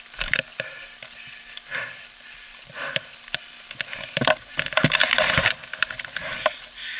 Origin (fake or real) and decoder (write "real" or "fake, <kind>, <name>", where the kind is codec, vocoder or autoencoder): fake, vocoder, BigVGAN v2